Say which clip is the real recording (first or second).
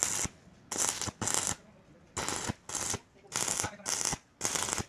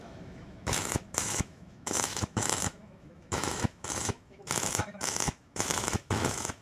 first